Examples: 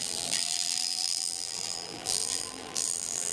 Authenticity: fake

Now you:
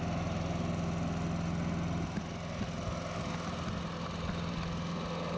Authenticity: real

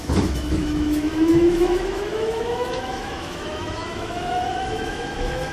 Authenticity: fake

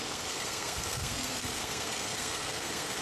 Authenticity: fake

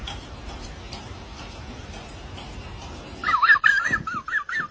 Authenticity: real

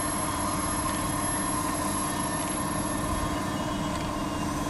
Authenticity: real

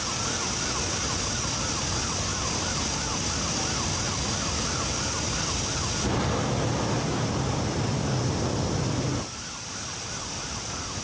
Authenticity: real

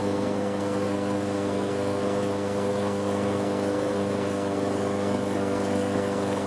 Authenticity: fake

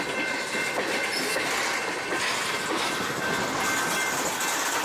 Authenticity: real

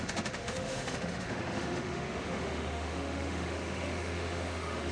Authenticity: fake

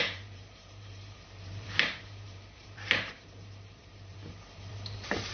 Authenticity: fake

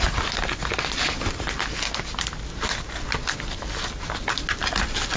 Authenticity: real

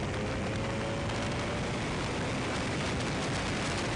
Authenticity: real